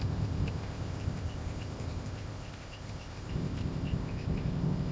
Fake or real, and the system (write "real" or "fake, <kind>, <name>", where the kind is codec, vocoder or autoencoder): fake, codec, ZipCodec